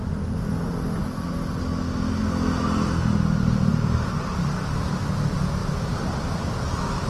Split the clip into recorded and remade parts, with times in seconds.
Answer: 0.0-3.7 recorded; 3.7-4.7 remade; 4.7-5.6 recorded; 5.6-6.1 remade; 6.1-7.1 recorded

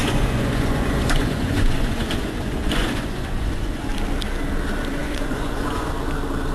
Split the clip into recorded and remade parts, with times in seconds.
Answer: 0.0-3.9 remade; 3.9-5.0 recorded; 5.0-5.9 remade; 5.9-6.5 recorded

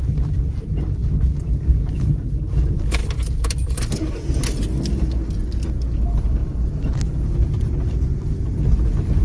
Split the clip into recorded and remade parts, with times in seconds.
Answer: 0.0-9.2 recorded

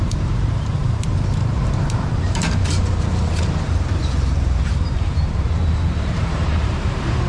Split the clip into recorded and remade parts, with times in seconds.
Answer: 0.0-7.3 remade